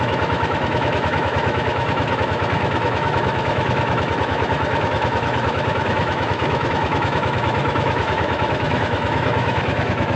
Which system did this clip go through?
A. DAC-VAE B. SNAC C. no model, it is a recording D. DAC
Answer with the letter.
A